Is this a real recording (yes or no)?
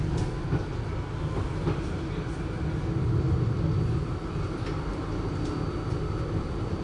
yes